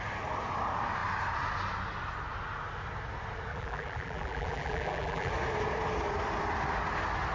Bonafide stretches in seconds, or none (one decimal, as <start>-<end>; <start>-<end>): 0.0-3.5; 5.3-7.3

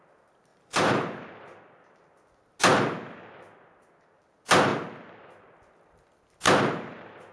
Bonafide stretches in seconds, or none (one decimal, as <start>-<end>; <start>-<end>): 0.0-0.5; 1.3-7.3

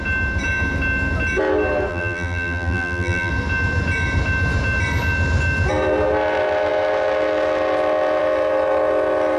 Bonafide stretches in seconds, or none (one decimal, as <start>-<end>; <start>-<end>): 0.0-1.9; 3.3-9.4

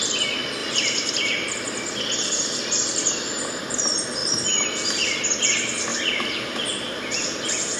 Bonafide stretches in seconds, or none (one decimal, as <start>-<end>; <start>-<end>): 0.0-0.6; 1.1-5.9; 6.8-7.8

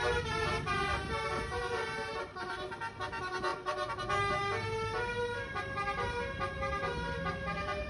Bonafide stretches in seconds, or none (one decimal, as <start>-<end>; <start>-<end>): 0.0-7.9